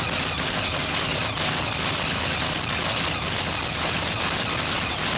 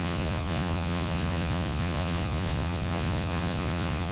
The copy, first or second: second